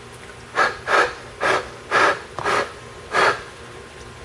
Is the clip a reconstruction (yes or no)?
no